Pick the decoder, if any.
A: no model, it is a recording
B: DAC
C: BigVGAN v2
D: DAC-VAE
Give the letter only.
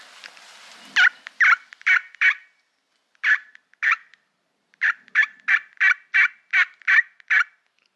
A